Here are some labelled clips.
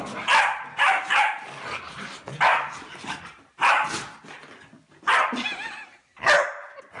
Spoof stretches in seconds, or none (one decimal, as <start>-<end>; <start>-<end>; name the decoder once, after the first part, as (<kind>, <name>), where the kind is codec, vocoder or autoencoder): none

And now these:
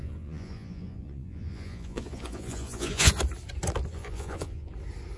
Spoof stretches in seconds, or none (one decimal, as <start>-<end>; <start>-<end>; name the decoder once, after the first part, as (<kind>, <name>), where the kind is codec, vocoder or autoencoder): 0.0-3.1 (vocoder, Vocos); 3.9-4.7

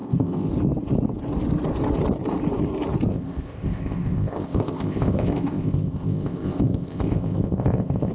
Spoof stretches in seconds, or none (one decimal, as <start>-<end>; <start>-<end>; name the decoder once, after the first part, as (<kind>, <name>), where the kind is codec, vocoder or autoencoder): 0.0-0.5 (codec, ZipCodec); 3.1-8.1